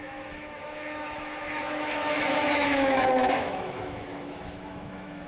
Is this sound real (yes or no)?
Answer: no